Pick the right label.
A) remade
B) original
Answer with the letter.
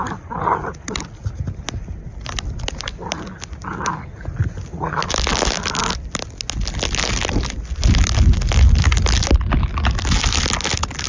B